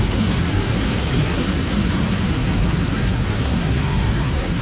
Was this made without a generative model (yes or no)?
no